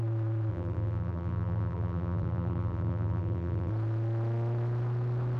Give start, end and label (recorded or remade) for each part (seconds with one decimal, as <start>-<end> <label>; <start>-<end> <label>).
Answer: 0.0-0.5 recorded; 0.5-3.7 remade; 3.7-5.4 recorded